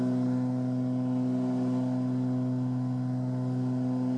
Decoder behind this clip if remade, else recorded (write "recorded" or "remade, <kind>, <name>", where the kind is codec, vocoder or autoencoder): recorded